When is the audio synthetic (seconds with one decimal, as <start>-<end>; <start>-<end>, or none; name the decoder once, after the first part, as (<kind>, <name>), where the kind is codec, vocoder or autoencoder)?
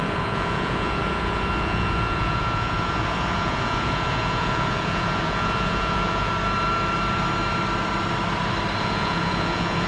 0.0-6.3 (vocoder, Vocos); 8.8-9.9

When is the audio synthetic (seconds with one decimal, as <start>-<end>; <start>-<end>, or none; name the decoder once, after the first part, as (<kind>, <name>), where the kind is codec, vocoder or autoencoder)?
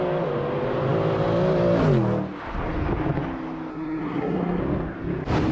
3.7-4.6 (codec, SNAC)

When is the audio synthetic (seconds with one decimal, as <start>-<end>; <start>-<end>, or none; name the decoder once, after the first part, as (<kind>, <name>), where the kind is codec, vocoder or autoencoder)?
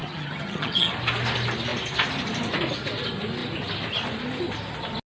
0.0-0.9 (vocoder, HiFi-GAN)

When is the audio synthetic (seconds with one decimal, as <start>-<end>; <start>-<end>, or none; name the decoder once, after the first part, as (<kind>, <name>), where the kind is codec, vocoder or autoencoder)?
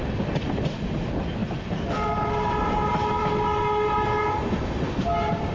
none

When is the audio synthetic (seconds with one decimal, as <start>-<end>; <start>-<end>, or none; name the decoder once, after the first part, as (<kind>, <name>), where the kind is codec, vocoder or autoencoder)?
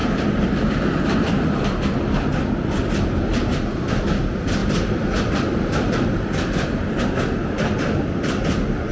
0.0-8.9 (vocoder, BigVGAN v2)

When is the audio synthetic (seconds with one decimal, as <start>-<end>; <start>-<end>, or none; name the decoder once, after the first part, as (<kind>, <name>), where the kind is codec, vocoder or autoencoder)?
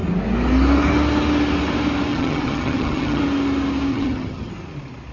2.1-3.2 (vocoder, HiFi-GAN); 3.9-4.5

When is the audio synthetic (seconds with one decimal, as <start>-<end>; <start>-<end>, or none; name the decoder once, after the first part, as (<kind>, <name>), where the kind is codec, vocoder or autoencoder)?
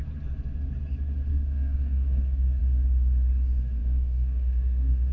1.3-2.6 (codec, SNAC); 3.8-5.1